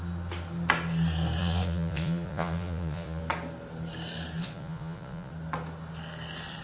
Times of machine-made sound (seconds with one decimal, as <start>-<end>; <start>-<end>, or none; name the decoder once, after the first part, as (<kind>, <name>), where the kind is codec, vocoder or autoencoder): 1.4-3.2 (vocoder, Vocos); 4.4-5.3